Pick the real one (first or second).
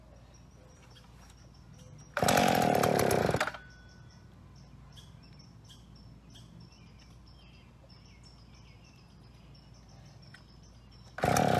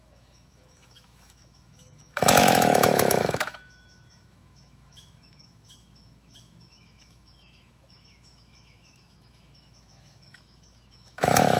first